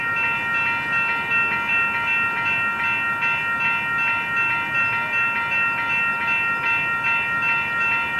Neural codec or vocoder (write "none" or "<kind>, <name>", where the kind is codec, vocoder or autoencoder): none